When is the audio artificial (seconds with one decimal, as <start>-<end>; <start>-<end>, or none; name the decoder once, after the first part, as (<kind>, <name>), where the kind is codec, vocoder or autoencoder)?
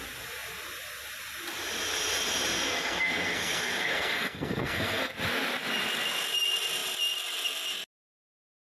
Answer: 2.7-5.1 (codec, SNAC)